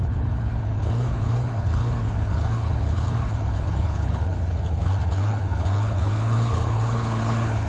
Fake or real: fake